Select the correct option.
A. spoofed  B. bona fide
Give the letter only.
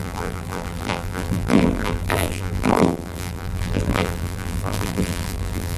A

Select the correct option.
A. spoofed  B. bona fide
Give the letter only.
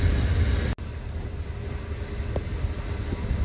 B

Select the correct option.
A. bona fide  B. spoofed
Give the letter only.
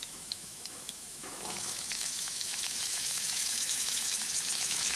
B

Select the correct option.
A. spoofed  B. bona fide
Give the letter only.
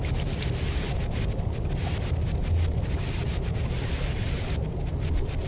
B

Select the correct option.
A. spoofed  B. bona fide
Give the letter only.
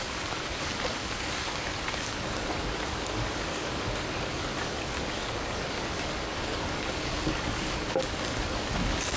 A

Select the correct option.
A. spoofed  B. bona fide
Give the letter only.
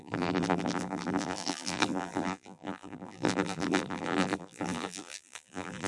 A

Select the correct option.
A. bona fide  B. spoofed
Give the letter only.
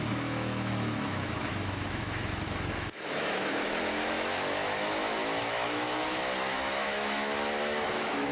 B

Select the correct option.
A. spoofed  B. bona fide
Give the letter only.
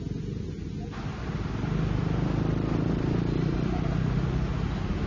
B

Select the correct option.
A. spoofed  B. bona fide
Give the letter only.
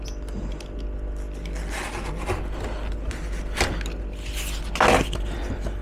B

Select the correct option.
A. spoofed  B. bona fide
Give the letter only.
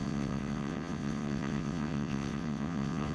A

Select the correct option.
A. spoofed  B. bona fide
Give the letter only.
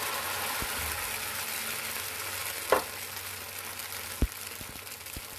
B